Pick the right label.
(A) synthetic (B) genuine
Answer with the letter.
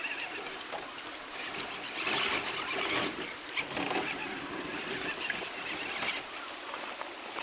A